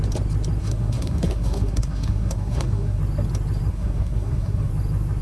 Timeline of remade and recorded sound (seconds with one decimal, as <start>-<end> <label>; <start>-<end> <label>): 0.0-0.6 recorded; 0.6-3.0 remade; 3.0-3.7 recorded; 3.7-4.7 remade; 4.7-5.2 recorded